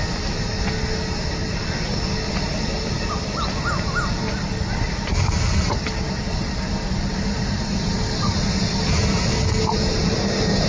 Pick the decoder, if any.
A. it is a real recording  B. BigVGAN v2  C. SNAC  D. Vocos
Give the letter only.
A